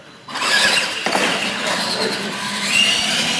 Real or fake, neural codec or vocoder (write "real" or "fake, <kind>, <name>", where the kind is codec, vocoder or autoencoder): real